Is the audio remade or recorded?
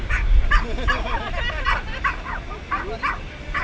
recorded